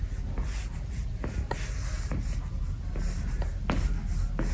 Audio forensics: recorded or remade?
recorded